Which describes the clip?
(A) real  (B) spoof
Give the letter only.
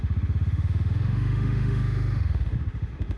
B